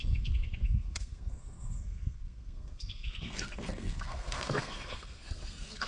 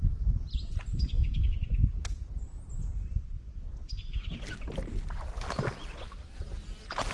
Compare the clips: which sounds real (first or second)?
second